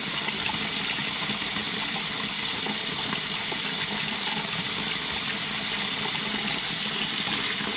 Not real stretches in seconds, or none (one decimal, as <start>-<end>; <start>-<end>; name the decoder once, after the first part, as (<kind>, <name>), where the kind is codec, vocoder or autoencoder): none